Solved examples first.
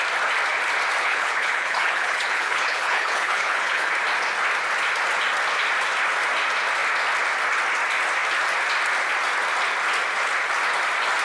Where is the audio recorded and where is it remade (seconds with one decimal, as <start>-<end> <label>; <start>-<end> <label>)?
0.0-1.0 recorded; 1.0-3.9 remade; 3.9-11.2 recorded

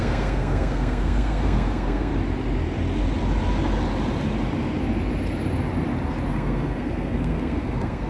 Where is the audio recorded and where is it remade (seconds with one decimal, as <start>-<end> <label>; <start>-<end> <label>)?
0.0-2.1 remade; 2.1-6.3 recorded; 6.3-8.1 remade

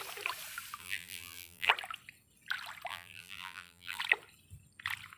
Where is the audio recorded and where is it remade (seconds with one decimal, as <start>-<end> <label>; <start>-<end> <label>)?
0.0-0.8 recorded; 0.8-1.7 remade; 1.7-2.9 recorded; 2.9-4.0 remade; 4.0-5.2 recorded